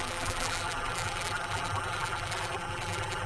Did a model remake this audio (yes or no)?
yes